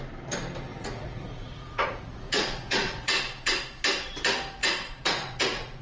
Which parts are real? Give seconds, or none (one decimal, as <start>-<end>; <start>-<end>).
0.0-0.7; 3.6-4.6